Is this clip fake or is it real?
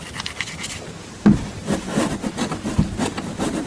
real